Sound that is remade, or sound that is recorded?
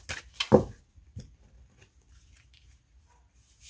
recorded